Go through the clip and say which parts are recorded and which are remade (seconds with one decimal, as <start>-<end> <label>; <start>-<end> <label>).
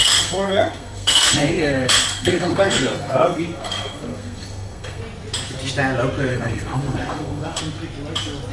0.0-5.0 remade; 5.0-6.3 recorded; 6.3-7.6 remade; 7.6-8.5 recorded